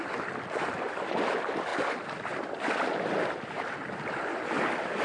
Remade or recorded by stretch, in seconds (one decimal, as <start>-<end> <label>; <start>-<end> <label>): 0.0-5.0 recorded